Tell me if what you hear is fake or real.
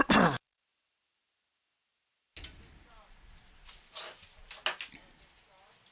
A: real